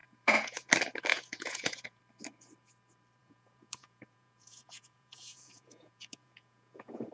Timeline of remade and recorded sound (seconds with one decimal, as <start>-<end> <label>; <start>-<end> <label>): 0.0-0.7 remade; 0.7-1.1 recorded; 1.1-2.0 remade; 2.0-3.2 recorded; 3.2-7.1 remade